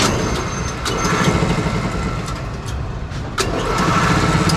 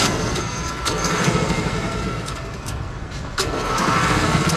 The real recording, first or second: first